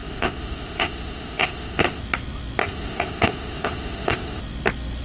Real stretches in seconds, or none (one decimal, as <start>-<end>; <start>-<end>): 2.0-2.6; 4.4-5.0